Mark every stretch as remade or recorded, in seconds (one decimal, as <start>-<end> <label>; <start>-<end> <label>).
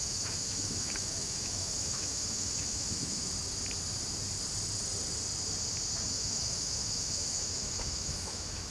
0.0-3.3 remade; 3.3-6.1 recorded; 6.1-8.7 remade